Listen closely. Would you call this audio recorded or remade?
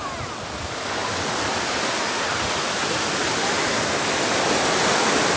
recorded